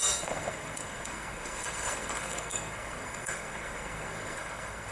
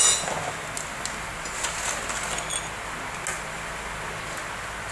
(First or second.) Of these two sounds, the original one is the second